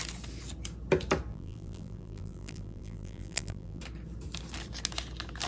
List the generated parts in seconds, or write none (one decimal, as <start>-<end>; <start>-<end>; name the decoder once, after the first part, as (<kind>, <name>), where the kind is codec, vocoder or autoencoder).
1.3-3.8 (vocoder, BigVGAN v2)